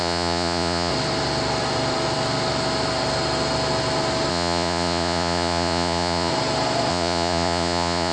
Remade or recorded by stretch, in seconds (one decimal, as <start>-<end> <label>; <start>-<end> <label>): 0.0-0.9 remade; 0.9-4.3 recorded; 4.3-6.3 remade; 6.3-6.9 recorded; 6.9-8.1 remade